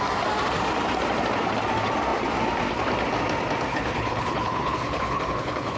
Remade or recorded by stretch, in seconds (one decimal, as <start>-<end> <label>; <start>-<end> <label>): 0.0-3.7 recorded; 3.7-5.8 remade

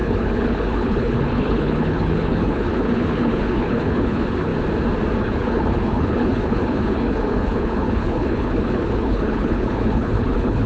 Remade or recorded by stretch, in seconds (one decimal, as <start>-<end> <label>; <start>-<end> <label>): 0.0-4.5 remade; 4.5-5.2 recorded; 5.2-10.7 remade

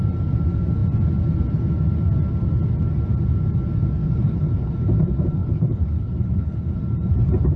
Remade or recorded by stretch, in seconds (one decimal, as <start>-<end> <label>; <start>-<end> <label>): 0.0-4.0 recorded; 4.0-4.7 remade; 4.7-5.4 recorded; 5.4-6.8 remade; 6.8-7.6 recorded

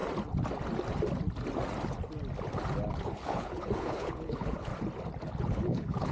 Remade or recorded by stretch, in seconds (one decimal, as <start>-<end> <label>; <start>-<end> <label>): 0.0-2.9 recorded; 2.9-4.7 remade; 4.7-5.4 recorded; 5.4-6.1 remade

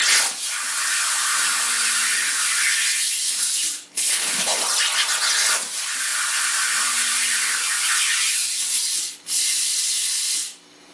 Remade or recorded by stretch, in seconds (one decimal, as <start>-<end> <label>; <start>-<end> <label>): 0.0-3.9 recorded; 3.9-4.6 remade; 4.6-10.9 recorded

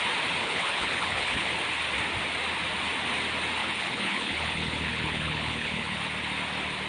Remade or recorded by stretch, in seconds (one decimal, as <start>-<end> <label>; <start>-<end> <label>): 0.0-0.4 recorded; 0.4-1.5 remade; 1.5-3.6 recorded; 3.6-6.0 remade; 6.0-6.9 recorded

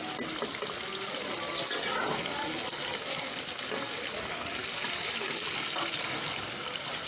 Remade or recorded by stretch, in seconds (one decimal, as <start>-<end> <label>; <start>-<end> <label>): 0.0-7.1 recorded